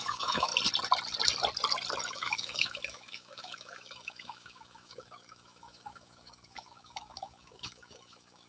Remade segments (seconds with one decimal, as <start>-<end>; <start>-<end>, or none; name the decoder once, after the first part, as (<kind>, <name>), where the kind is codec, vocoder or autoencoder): 0.0-0.5 (autoencoder, DAC-VAE); 2.1-8.5